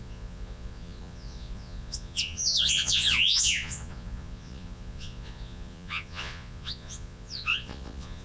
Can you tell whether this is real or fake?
fake